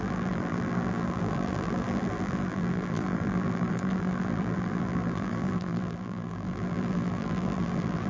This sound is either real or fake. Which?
fake